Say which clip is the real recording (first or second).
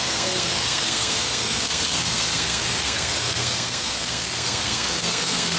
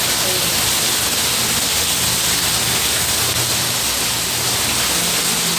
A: second